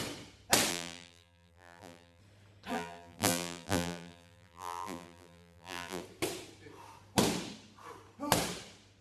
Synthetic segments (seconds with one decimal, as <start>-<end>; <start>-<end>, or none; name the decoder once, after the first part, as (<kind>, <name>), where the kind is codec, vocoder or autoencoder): 0.7-2.2 (vocoder, BigVGAN v2); 2.7-6.0

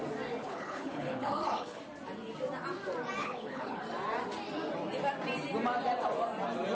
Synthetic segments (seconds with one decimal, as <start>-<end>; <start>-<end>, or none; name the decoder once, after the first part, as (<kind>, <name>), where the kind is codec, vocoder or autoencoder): 0.4-1.8 (codec, HILCodec); 3.2-3.8

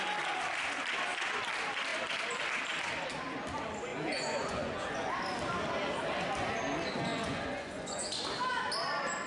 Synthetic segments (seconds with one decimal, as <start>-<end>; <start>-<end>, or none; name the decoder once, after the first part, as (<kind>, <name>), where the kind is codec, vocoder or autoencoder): 3.9-5.1 (vocoder, Vocos); 7.1-8.2

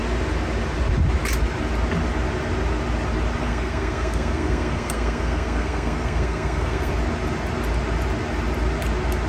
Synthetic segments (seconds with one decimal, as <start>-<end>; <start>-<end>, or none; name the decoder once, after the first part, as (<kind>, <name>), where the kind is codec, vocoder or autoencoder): 3.4-6.9 (codec, SNAC)

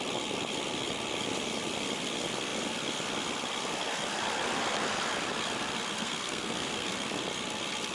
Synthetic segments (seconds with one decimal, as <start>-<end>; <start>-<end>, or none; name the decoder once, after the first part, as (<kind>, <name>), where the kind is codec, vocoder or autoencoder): 6.0-6.9 (codec, SNAC)

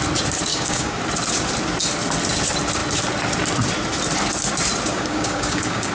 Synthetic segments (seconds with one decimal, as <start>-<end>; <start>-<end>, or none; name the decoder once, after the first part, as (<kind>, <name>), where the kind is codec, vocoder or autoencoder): 0.5-1.0 (codec, DAC); 4.9-5.9